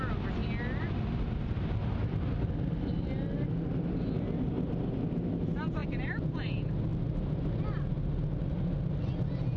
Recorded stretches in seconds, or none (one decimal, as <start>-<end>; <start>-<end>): 0.0-9.6